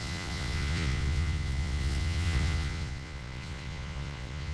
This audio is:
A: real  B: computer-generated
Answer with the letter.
B